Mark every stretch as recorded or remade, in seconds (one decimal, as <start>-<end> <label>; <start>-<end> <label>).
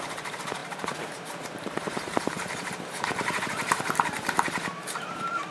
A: 0.0-5.5 remade